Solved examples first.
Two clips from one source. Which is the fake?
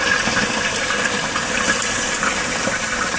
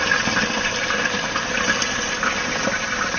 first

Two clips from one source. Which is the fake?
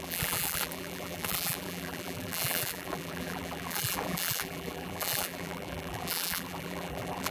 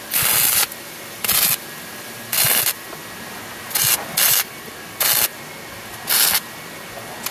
first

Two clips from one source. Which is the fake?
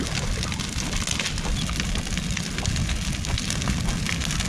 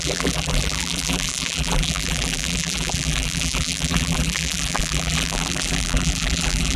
second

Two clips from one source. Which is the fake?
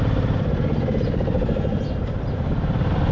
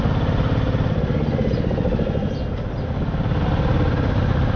first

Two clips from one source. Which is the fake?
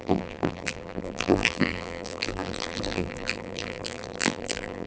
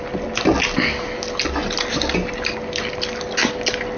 first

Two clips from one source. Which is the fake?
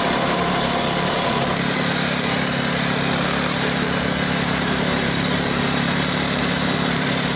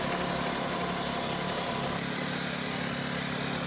first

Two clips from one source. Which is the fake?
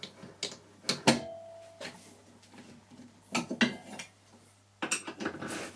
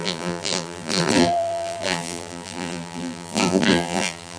second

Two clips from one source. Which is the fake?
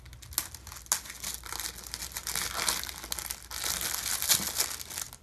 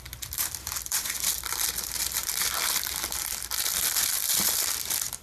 second